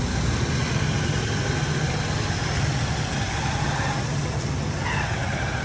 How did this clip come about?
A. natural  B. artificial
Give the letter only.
A